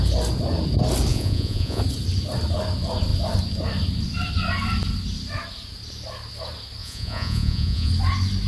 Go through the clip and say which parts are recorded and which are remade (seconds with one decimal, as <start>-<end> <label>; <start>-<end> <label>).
0.0-1.1 recorded; 1.1-1.8 remade; 1.8-6.8 recorded; 6.8-7.9 remade; 7.9-8.5 recorded